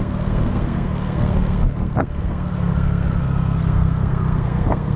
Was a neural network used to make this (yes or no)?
yes